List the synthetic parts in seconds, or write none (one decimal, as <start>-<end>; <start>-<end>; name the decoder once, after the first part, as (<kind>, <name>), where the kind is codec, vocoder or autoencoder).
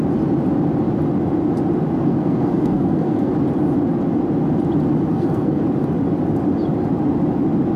2.0-3.3 (codec, SNAC); 5.1-5.6